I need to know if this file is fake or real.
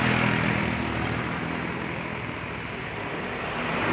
real